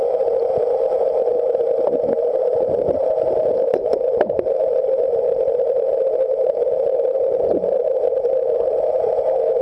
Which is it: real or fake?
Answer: real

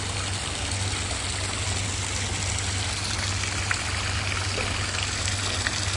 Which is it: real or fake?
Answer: real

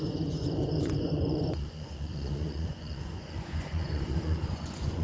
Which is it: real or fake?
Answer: fake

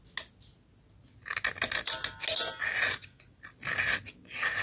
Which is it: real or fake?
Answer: real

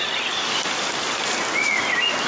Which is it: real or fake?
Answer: real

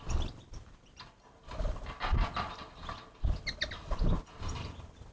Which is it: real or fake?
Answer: real